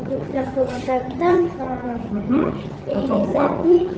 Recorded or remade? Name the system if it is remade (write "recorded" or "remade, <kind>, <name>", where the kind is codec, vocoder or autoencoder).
remade, vocoder, HiFi-GAN